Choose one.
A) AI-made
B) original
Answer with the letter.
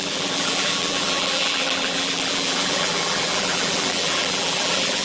A